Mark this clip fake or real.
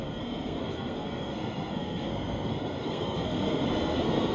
fake